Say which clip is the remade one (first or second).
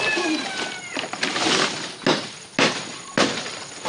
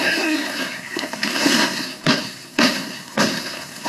second